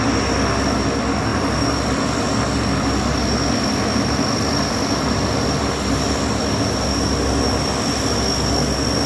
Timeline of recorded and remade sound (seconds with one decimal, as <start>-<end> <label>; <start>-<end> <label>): 0.0-9.1 recorded